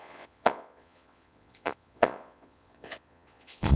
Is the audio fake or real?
fake